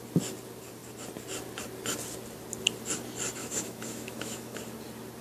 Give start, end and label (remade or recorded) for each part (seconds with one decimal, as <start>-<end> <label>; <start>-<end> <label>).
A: 0.0-3.4 recorded; 3.4-4.6 remade; 4.6-5.2 recorded